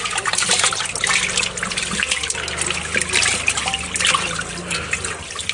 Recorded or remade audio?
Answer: recorded